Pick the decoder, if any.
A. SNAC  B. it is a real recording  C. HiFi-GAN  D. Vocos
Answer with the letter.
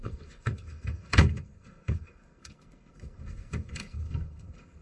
A